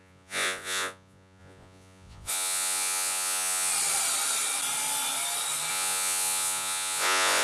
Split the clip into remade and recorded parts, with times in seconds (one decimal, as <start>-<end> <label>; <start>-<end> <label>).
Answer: 0.0-3.7 remade; 3.7-5.7 recorded; 5.7-7.4 remade